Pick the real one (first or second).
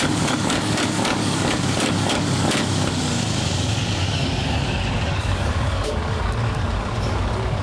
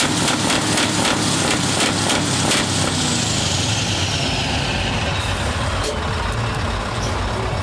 second